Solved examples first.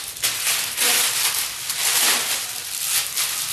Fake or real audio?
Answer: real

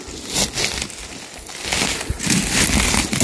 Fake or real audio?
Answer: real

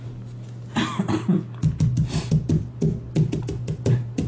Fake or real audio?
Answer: real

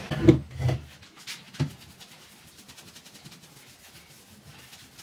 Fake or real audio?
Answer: real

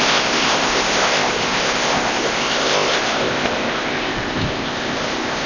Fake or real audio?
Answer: fake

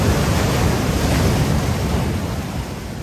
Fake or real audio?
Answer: real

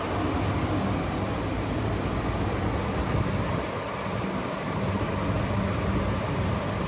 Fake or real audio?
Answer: real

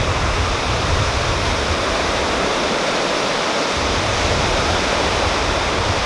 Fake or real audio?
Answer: fake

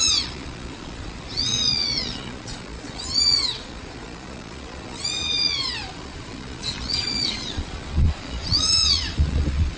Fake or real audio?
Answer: fake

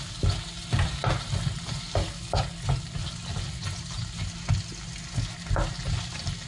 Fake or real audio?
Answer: real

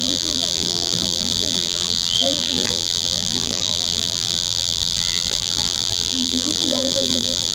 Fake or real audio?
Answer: fake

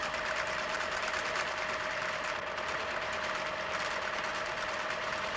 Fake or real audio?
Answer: fake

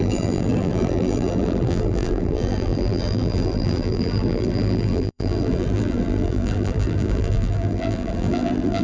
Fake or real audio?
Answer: fake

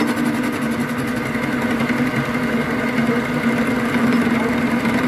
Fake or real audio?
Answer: real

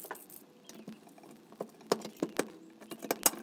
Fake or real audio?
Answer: real